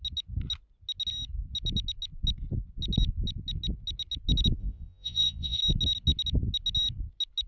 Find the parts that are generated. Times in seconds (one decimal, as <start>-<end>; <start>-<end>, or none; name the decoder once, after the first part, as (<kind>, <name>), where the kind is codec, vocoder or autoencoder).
4.6-5.6 (vocoder, Vocos)